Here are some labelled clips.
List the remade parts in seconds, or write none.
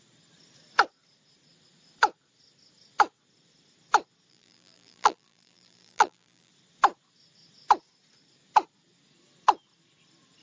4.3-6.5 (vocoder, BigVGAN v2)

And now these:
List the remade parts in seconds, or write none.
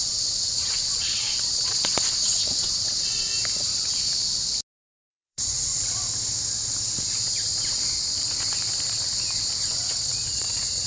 0.0-3.3 (vocoder, WaveNeXt); 5.1-5.7; 9.6-10.9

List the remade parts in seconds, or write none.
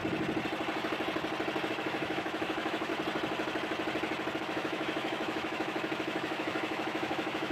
1.7-2.9 (autoencoder, DAC-VAE); 4.4-7.5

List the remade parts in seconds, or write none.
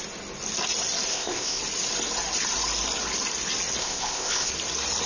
1.1-1.6 (codec, ZipCodec); 3.8-4.5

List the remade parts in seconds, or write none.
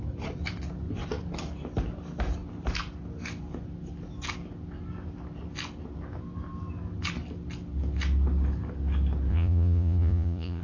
9.3-10.6 (vocoder, Vocos)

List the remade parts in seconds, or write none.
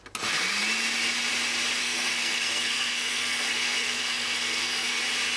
1.8-5.0 (codec, SNAC)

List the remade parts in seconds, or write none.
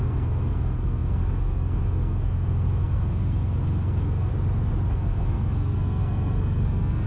0.0-4.3 (codec, SNAC); 4.9-7.1